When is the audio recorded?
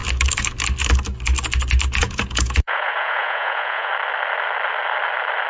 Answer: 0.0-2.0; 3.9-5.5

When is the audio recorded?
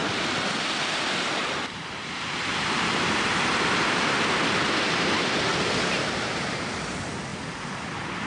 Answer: 0.0-0.6; 7.3-7.9